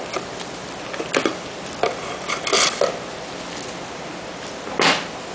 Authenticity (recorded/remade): recorded